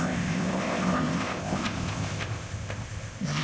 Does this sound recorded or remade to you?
remade